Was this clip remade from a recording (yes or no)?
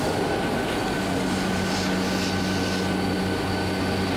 no